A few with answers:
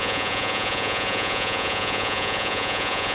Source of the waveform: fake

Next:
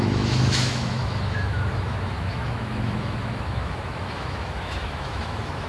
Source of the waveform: fake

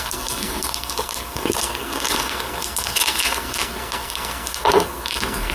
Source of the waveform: fake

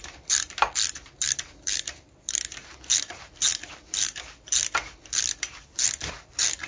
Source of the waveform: fake